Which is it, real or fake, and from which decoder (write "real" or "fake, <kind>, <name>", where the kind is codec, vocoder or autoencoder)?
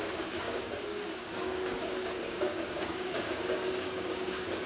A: fake, codec, DAC